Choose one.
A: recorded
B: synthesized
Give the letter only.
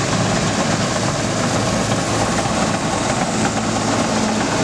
A